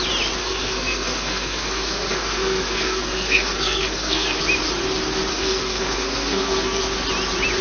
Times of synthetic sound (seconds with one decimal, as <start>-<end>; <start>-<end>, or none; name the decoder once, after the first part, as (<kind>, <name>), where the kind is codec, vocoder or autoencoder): 0.4-4.4 (codec, SNAC); 5.3-6.8